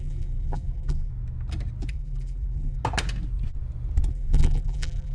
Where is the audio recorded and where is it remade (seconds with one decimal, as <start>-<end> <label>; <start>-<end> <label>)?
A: 0.0-1.1 remade; 1.1-1.9 recorded; 1.9-2.8 remade; 2.8-4.1 recorded; 4.1-5.1 remade